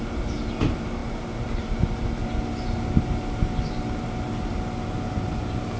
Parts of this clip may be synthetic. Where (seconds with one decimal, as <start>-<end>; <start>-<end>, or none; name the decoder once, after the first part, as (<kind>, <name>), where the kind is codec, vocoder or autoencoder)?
none